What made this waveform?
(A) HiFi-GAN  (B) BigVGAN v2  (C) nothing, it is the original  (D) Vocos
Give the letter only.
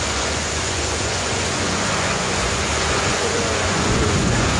D